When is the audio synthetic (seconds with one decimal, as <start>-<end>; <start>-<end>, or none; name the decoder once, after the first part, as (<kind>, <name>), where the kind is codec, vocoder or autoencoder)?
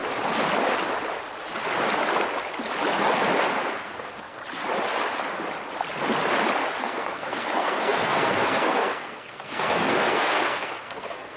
3.7-4.4 (codec, SNAC); 6.8-11.4